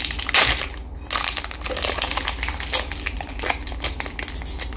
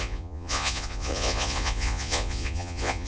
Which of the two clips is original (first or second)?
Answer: first